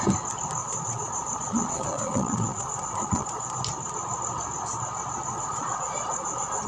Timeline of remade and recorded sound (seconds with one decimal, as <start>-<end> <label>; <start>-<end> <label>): 0.0-0.6 recorded; 0.6-3.6 remade; 3.6-5.3 recorded; 5.3-6.7 remade

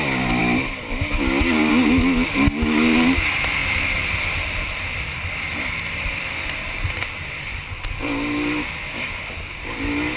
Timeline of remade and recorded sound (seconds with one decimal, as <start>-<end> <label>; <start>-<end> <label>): 0.0-3.6 recorded; 3.6-7.6 remade; 7.6-10.2 recorded

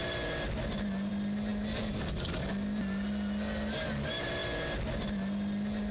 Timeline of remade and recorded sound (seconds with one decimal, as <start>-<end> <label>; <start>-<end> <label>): 0.0-5.9 recorded

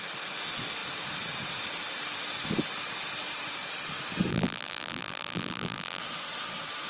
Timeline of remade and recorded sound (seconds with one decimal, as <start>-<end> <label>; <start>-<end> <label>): 0.0-4.3 recorded; 4.3-6.0 remade; 6.0-6.9 recorded

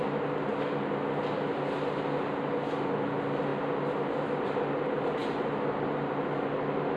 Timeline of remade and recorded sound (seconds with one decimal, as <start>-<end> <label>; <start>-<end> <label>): 0.0-0.5 recorded; 0.5-1.2 remade; 1.2-3.5 recorded; 3.5-4.8 remade; 4.8-7.0 recorded